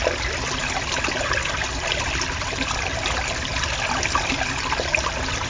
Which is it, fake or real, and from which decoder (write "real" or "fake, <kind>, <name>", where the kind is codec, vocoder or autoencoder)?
real